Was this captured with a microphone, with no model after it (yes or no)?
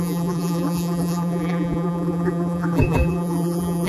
no